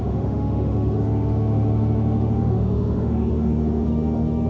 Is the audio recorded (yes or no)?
no